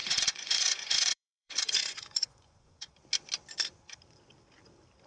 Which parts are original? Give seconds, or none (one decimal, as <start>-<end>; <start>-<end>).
2.9-5.1